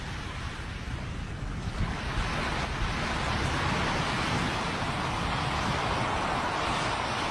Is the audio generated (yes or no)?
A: no